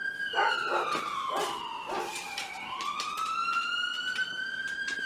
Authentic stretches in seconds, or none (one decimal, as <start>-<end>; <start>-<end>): 0.0-5.1